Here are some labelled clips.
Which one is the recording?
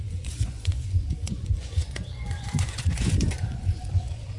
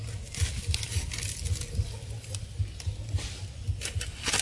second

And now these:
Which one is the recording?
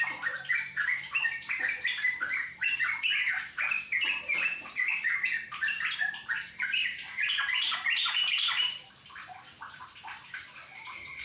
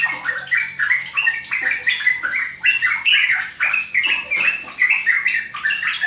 second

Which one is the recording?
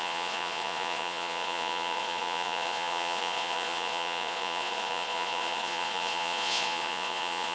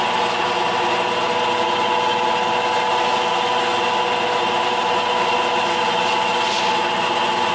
second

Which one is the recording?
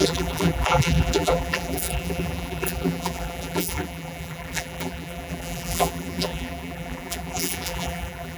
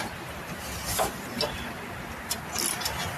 second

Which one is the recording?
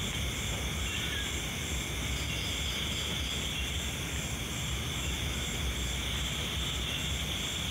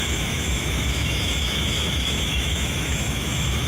first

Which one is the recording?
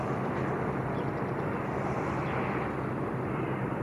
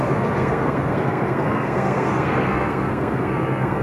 first